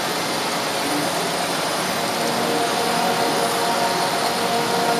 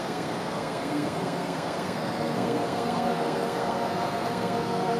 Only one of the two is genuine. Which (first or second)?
first